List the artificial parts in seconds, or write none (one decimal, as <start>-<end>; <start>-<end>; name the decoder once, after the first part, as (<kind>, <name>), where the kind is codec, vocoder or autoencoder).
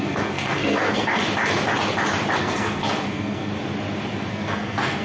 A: 0.0-1.1 (codec, SNAC); 2.4-3.5; 4.3-5.0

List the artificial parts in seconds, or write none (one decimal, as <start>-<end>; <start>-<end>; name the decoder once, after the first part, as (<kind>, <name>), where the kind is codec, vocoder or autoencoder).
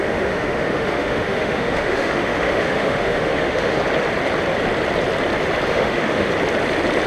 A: 0.0-3.8 (autoencoder, DAC-VAE); 5.7-6.3